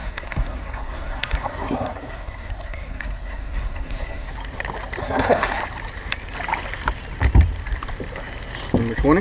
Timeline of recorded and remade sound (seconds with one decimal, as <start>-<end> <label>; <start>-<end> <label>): 0.0-4.3 remade; 4.3-5.0 recorded; 5.0-5.6 remade; 5.6-9.2 recorded